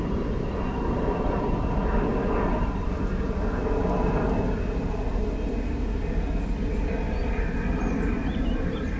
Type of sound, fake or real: real